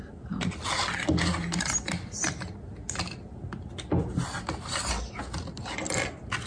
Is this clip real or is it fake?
real